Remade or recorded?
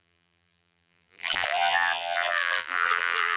remade